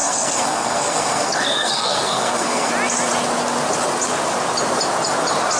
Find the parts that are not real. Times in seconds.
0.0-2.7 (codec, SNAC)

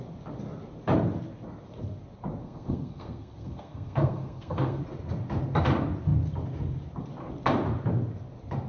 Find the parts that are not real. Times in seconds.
2.4-4.8 (codec, SNAC)

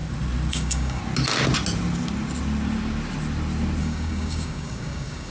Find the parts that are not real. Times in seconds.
0.5-1.0 (codec, DAC); 3.8-5.3